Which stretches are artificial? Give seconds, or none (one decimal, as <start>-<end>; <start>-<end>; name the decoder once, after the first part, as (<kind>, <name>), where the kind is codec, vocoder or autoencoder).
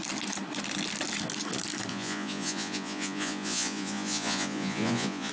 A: 1.9-5.3 (vocoder, Vocos)